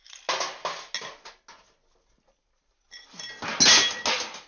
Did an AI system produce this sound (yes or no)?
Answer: no